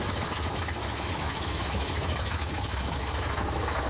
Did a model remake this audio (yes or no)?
yes